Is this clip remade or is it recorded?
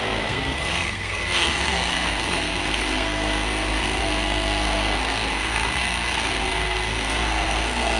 remade